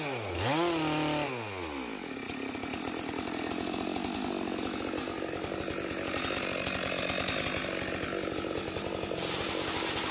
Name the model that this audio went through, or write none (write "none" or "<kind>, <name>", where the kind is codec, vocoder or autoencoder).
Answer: none